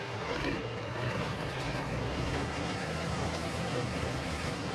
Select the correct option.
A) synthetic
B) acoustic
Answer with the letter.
A